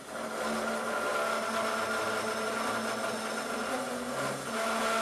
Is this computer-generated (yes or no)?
no